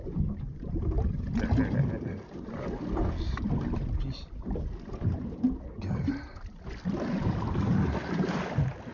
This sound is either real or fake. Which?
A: real